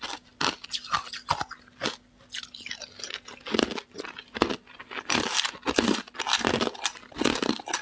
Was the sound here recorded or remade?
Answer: recorded